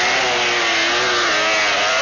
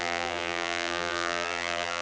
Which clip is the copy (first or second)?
second